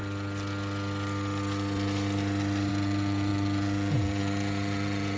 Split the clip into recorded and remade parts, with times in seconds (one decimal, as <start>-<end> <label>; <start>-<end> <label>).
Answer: 0.0-2.7 recorded; 2.7-5.2 remade